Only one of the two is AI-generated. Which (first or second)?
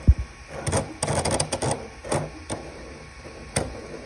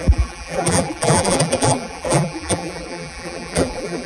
second